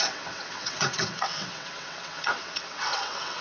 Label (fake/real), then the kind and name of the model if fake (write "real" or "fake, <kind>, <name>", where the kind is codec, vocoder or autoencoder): fake, vocoder, WaveNeXt